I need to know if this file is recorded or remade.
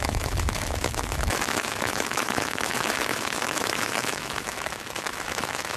remade